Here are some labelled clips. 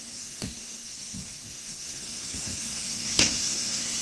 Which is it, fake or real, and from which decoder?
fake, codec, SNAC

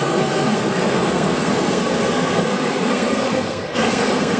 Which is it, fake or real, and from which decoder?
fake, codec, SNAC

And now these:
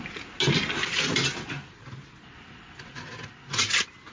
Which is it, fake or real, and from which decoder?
real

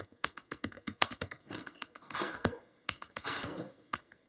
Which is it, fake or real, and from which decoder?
fake, codec, SNAC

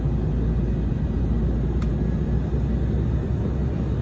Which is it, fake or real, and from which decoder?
real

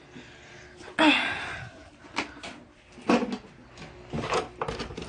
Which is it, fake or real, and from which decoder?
real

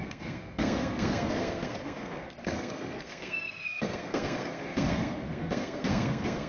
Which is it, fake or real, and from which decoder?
fake, codec, SNAC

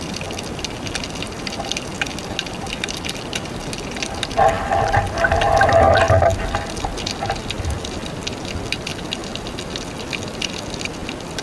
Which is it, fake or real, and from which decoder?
real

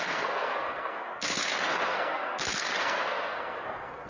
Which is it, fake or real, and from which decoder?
fake, codec, SNAC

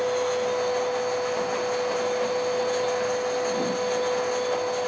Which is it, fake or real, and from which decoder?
real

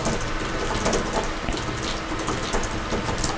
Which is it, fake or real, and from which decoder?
real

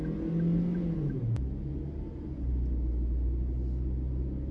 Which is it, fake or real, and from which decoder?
real